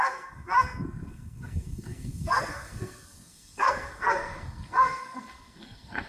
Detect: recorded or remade remade